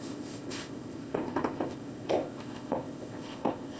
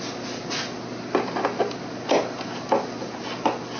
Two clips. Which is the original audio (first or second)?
second